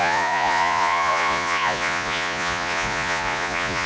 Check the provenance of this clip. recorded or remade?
remade